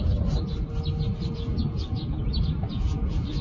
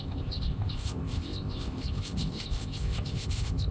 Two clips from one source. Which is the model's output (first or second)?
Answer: second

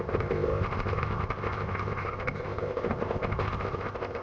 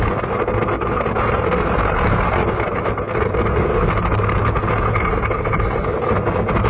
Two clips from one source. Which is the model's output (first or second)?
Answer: first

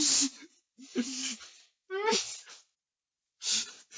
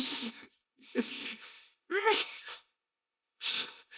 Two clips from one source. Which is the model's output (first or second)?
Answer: second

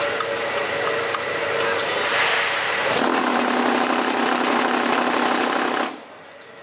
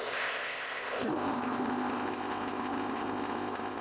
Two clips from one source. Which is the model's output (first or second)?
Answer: second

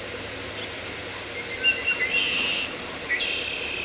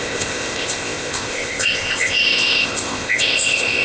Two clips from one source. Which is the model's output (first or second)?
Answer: second